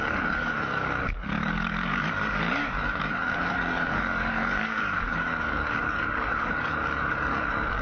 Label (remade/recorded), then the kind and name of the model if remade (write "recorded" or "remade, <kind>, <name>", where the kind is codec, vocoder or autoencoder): remade, codec, DAC